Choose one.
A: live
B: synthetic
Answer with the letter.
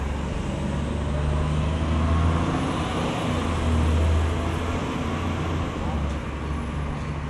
A